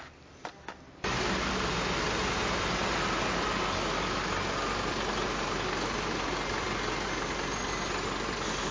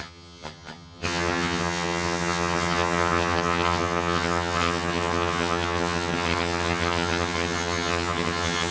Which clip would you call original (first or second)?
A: first